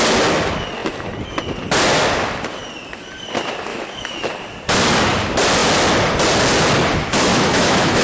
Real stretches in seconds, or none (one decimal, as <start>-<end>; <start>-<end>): 0.0-3.7; 4.3-7.3